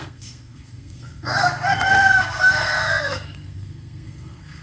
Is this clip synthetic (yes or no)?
yes